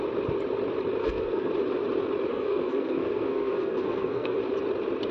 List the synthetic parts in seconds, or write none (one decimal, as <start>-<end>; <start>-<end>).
1.0-1.5; 2.3-4.4